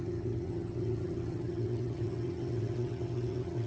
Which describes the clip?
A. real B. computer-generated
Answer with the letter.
B